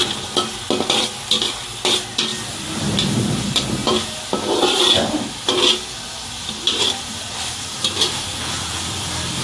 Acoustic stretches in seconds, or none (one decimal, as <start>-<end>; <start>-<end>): 0.0-8.3; 8.8-9.4